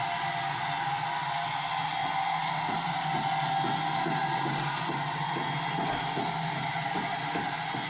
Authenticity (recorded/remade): recorded